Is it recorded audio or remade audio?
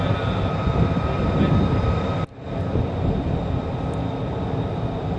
recorded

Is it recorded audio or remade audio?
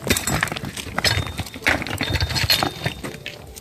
recorded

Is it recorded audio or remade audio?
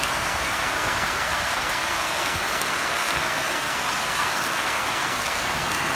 remade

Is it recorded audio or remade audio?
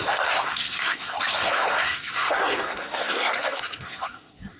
remade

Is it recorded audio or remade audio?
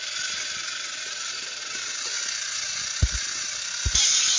recorded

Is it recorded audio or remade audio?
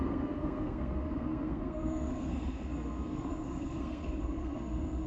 remade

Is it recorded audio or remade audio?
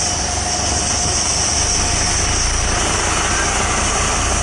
recorded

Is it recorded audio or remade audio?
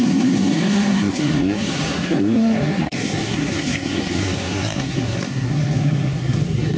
remade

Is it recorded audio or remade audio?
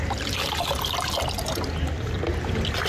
recorded